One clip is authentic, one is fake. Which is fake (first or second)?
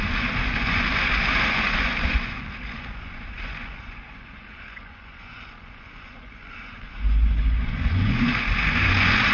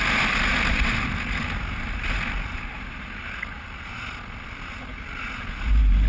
first